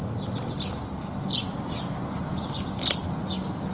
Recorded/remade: recorded